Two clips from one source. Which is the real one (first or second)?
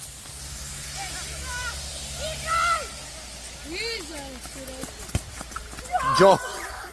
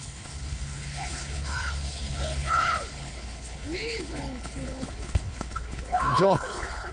first